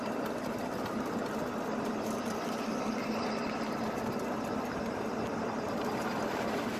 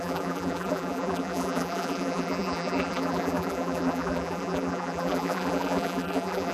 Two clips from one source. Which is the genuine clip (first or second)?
first